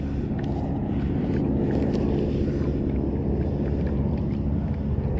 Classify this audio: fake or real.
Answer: real